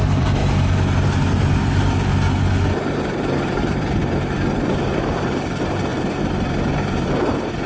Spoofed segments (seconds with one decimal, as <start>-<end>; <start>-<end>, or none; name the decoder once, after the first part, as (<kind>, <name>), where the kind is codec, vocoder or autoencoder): 0.0-0.4 (vocoder, BigVGAN v2); 1.6-2.1; 2.9-4.0; 4.7-7.7